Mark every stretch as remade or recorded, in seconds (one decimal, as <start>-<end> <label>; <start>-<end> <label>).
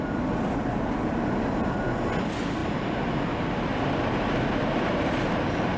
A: 0.0-5.8 recorded